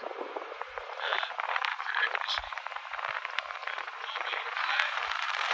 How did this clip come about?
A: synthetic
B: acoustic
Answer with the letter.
A